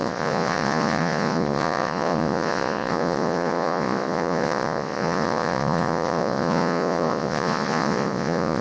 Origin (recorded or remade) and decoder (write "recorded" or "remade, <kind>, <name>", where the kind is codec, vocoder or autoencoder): remade, vocoder, Vocos